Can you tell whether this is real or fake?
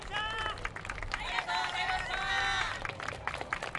real